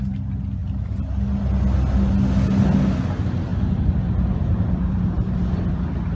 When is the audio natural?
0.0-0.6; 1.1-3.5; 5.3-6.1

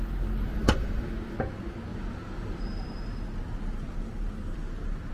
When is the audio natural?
0.0-0.6; 1.1-1.9

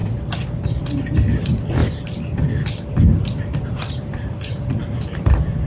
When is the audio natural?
0.0-1.8; 5.2-5.7

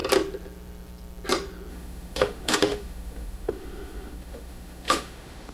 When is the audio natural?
0.0-1.7

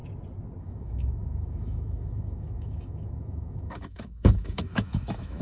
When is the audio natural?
0.0-0.6

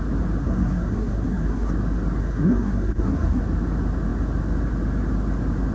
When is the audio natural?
0.0-0.4; 1.7-2.2; 3.4-5.7

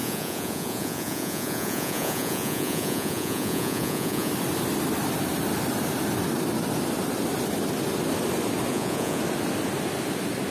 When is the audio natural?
4.3-8.7; 9.2-10.5

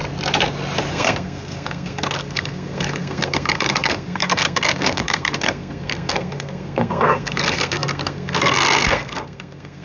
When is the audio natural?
0.0-0.9